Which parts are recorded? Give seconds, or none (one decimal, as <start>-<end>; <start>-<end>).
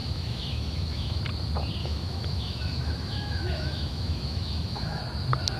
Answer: 1.2-1.8; 5.0-5.6